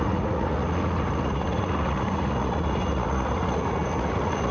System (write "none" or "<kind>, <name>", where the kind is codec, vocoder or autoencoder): vocoder, Vocos